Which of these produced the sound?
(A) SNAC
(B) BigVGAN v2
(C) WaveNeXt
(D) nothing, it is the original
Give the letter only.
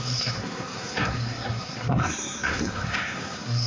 A